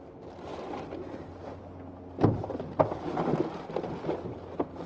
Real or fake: real